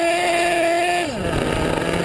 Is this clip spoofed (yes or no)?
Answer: no